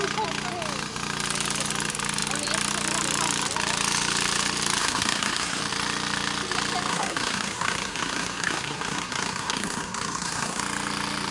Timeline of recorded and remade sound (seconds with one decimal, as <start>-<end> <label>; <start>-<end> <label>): 0.0-4.8 recorded; 4.8-5.6 remade; 5.6-6.9 recorded; 6.9-10.6 remade; 10.6-11.3 recorded